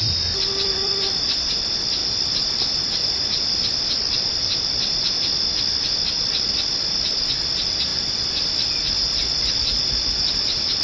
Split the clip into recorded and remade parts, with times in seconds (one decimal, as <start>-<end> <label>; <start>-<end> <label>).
0.0-7.9 recorded; 7.9-10.8 remade